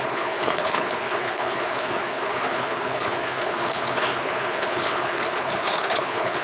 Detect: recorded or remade remade